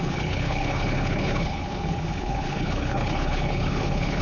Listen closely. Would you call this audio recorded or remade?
remade